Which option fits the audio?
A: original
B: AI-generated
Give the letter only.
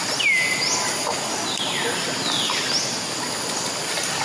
A